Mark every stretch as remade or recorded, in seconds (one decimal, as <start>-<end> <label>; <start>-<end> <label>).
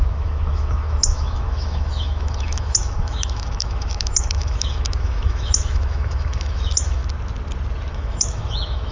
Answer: 0.0-7.0 remade; 7.0-7.9 recorded; 7.9-8.9 remade